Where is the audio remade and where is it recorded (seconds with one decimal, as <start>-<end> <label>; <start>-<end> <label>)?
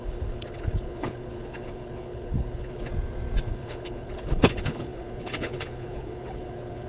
0.0-2.9 remade; 2.9-3.5 recorded; 3.5-6.9 remade